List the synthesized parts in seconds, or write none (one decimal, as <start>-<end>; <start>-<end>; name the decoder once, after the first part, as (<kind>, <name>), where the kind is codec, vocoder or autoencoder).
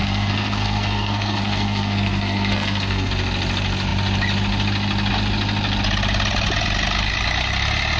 0.0-3.1 (codec, SNAC)